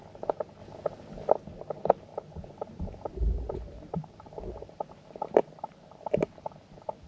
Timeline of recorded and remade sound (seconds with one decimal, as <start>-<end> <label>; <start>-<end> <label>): 0.0-2.1 recorded; 2.1-6.4 remade; 6.4-7.1 recorded